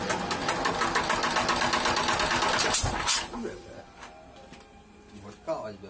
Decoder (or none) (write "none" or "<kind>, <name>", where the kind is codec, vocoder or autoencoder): none